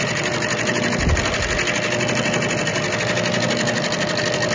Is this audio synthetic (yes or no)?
no